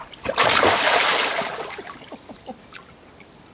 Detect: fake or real real